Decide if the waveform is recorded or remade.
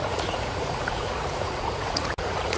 remade